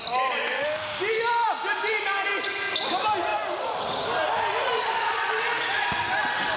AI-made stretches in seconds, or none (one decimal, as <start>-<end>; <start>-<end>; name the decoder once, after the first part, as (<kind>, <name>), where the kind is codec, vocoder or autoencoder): none